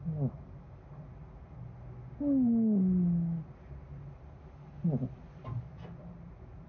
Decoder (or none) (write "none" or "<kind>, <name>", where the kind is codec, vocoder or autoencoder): none